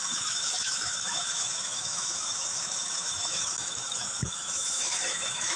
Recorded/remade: remade